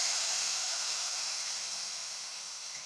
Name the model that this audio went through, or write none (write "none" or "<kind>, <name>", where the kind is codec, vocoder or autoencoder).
autoencoder, DAC-VAE